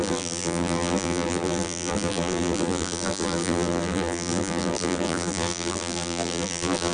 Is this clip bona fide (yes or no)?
no